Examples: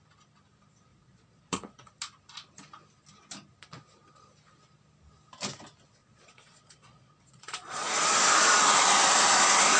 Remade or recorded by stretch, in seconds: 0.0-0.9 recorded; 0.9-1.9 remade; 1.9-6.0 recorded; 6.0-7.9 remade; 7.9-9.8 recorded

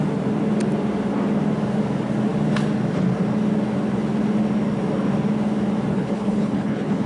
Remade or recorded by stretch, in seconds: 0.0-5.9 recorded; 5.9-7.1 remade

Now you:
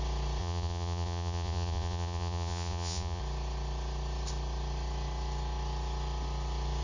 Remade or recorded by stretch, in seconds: 0.0-0.4 recorded; 0.4-3.2 remade; 3.2-6.8 recorded

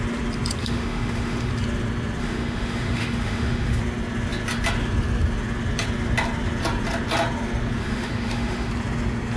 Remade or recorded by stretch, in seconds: 0.0-0.6 recorded; 0.6-1.5 remade; 1.5-2.2 recorded; 2.2-3.8 remade; 3.8-7.8 recorded; 7.8-8.7 remade; 8.7-9.4 recorded